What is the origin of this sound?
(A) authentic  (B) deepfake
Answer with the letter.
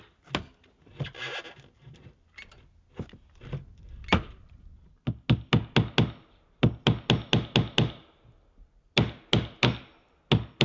A